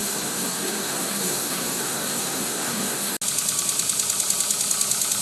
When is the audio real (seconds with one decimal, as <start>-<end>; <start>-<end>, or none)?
3.1-5.2